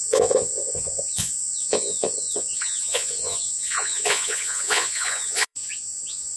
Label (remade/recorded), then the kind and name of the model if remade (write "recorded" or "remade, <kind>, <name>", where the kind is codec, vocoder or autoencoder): remade, vocoder, Vocos